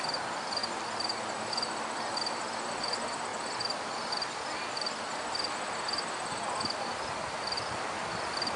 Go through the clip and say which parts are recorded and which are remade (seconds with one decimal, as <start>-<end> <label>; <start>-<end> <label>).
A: 0.0-8.6 recorded